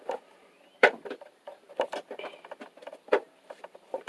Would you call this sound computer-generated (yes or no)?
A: yes